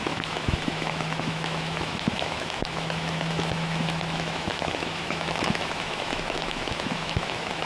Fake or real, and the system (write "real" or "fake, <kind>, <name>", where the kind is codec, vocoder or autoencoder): fake, autoencoder, DAC-VAE